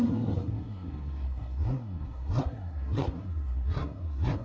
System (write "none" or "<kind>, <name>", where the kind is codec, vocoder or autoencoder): codec, SNAC